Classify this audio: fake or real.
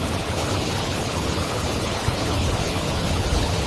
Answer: fake